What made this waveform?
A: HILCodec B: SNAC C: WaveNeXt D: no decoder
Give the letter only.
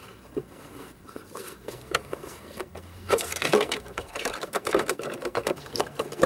B